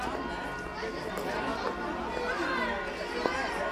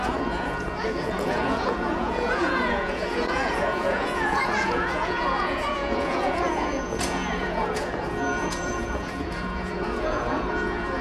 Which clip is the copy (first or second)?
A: second